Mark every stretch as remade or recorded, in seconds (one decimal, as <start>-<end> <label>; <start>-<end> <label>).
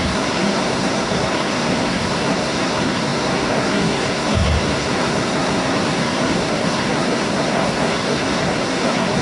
0.0-9.2 remade